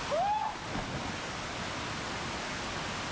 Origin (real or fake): real